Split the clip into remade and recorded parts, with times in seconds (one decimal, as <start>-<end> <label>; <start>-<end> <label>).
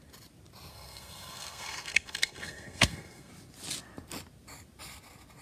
0.0-0.7 recorded; 0.7-3.3 remade; 3.3-5.4 recorded